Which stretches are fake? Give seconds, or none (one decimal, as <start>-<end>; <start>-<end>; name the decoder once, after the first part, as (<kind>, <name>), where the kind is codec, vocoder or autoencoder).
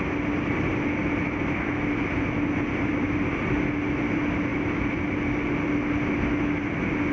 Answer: none